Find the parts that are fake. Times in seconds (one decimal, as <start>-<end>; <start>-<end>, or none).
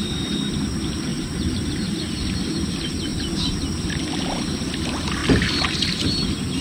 1.1-2.1